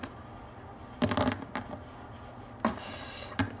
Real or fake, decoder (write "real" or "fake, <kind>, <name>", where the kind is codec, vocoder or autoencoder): real